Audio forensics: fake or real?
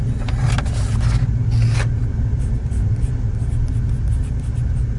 real